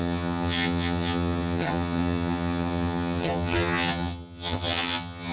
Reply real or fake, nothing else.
fake